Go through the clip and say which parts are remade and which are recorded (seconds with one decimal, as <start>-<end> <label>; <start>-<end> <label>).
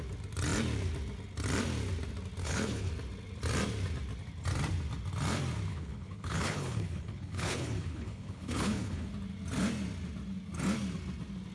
0.0-2.4 recorded; 2.4-2.9 remade; 2.9-5.7 recorded; 5.7-9.1 remade; 9.1-11.5 recorded